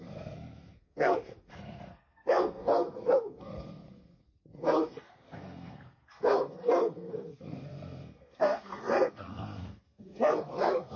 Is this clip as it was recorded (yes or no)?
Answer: no